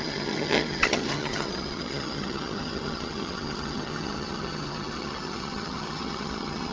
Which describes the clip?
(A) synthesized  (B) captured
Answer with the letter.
A